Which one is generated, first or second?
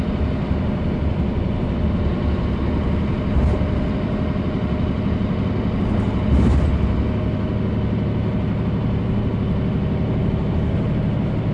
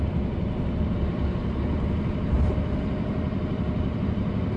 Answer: second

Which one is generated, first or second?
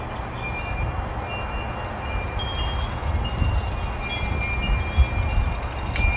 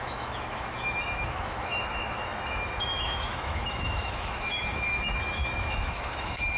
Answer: second